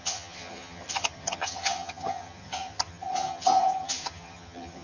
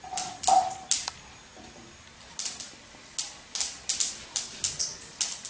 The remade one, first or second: first